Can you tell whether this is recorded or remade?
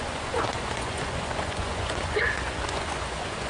remade